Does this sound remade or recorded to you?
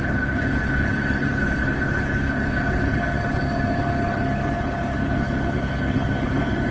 remade